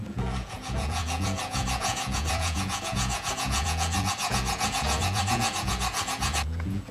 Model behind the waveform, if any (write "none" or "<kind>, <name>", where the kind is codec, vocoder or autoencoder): vocoder, Vocos